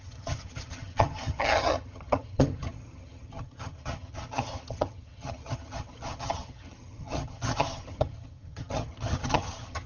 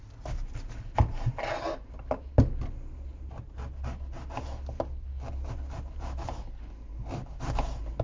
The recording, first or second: second